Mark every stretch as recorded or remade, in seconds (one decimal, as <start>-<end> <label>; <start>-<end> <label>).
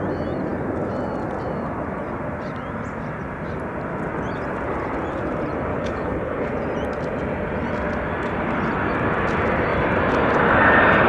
0.0-5.7 recorded; 5.7-6.5 remade; 6.5-11.1 recorded